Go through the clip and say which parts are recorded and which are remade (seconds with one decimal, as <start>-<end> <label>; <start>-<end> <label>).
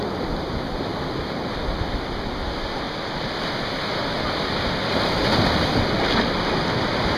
0.0-7.2 recorded